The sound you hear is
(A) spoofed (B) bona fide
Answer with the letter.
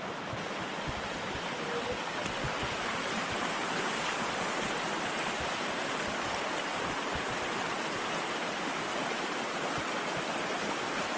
B